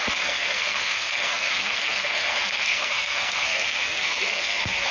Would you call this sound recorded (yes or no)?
no